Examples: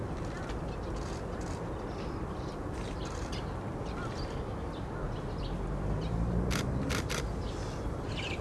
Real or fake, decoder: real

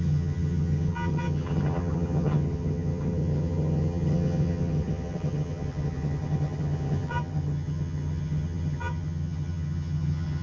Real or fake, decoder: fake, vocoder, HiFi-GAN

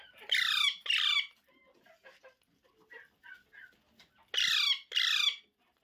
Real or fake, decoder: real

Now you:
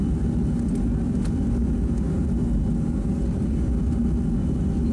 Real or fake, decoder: real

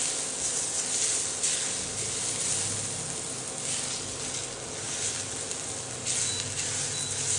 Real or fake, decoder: real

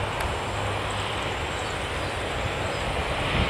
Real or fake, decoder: real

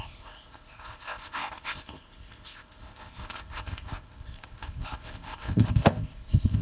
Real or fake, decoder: fake, codec, ZipCodec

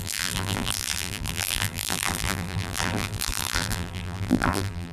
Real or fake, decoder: fake, vocoder, BigVGAN v2